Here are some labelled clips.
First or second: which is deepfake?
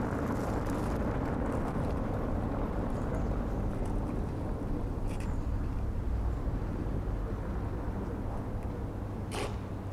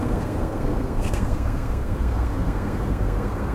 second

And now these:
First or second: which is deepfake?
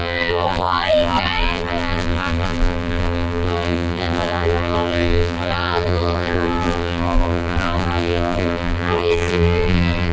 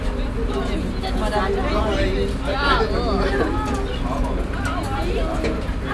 first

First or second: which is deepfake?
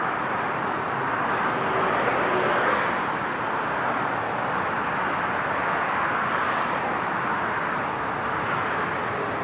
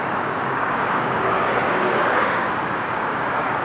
second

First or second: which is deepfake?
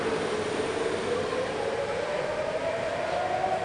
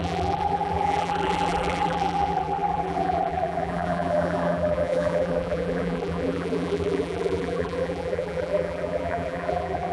second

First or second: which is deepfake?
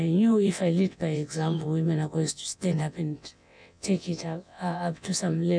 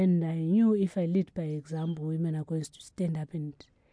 first